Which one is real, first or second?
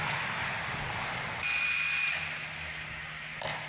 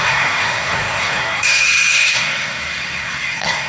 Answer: first